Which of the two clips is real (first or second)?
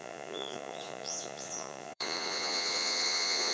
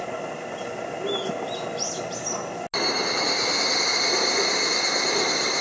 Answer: second